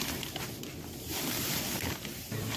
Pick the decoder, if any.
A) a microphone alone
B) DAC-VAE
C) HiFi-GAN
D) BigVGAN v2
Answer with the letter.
A